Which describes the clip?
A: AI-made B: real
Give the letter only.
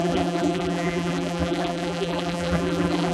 A